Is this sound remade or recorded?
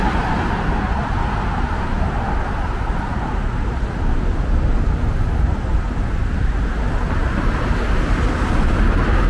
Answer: recorded